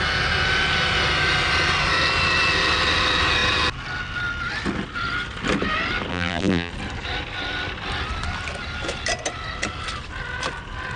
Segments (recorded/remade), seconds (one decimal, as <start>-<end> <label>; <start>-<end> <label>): 0.0-6.1 recorded; 6.1-6.7 remade; 6.7-11.0 recorded